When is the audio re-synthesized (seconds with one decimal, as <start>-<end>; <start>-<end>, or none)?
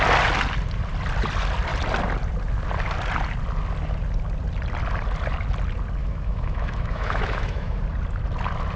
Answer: 6.0-7.8